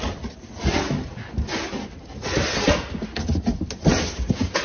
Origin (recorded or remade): recorded